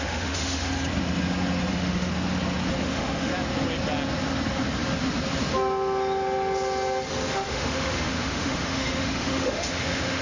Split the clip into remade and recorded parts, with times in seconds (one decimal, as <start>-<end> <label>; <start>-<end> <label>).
0.0-0.7 remade; 0.7-1.7 recorded; 1.7-2.1 remade; 2.1-2.8 recorded; 2.8-3.3 remade; 3.3-7.3 recorded; 7.3-10.2 remade